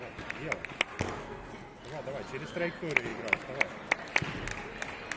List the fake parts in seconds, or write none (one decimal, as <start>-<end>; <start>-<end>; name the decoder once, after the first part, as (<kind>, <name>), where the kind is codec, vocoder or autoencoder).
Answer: 1.2-1.8 (codec, SNAC)